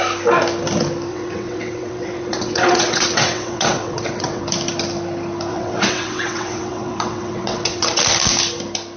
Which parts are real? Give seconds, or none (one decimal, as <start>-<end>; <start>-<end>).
0.0-1.1; 4.4-5.5; 8.0-9.0